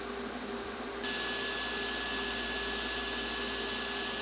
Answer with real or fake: real